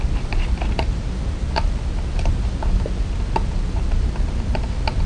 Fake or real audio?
real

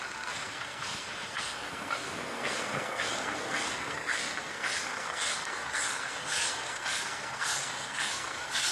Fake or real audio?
fake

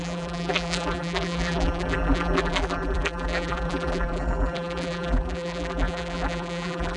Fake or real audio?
fake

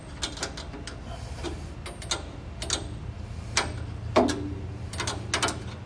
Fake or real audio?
real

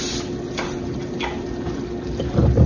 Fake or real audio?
real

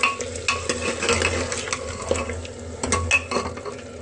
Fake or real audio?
real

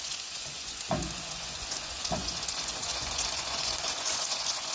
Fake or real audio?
fake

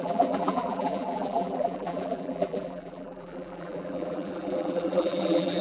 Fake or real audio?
fake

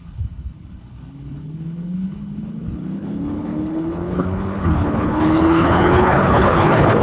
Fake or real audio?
fake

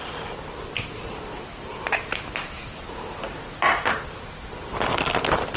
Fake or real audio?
real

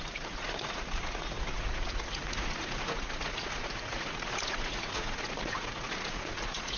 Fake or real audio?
fake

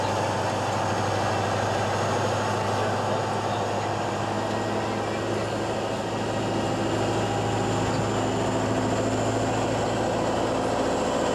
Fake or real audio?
real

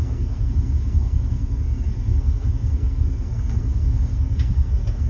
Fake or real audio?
fake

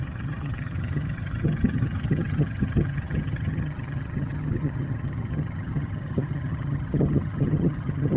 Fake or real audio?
fake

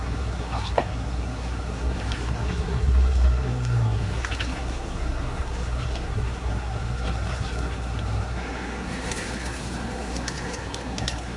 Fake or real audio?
fake